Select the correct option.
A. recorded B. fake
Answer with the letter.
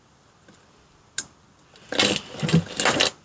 A